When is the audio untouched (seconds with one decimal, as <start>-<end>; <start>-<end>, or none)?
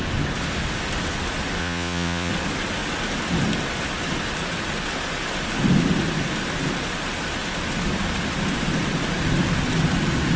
0.0-1.6; 2.3-10.4